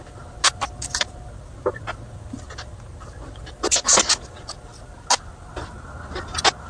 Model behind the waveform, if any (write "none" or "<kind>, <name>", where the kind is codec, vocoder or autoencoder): none